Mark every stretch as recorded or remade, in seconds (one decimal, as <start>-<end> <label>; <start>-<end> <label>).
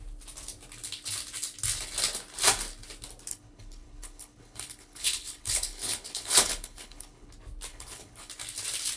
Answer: 0.0-3.3 recorded; 3.3-7.3 remade; 7.3-7.7 recorded; 7.7-8.3 remade; 8.3-9.0 recorded